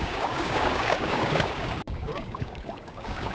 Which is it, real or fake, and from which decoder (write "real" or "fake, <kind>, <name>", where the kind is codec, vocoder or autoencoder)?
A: fake, codec, DAC